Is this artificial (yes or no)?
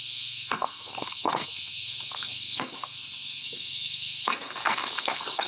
yes